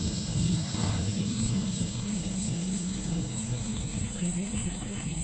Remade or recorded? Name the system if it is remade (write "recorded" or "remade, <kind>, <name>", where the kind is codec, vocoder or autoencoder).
remade, codec, SNAC